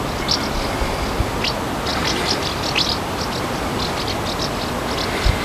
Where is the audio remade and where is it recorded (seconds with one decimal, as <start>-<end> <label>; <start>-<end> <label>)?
0.0-5.4 recorded